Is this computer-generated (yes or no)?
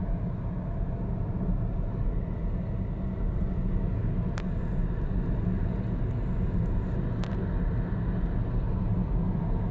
no